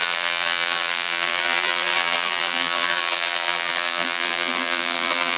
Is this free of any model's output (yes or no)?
no